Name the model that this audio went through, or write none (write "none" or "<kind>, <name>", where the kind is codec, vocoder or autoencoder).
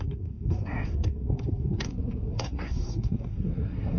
codec, SNAC